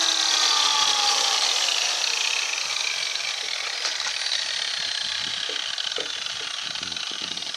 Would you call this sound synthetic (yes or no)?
yes